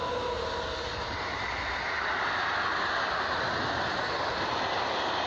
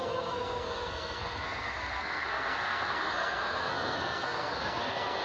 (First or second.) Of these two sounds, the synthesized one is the second